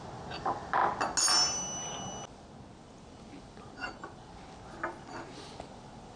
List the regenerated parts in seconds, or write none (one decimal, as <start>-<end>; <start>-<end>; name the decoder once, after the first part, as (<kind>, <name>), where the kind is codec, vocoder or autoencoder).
none